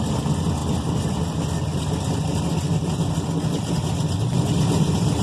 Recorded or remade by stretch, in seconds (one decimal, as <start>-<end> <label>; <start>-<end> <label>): 0.0-5.2 recorded